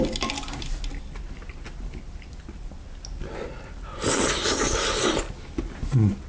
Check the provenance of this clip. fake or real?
real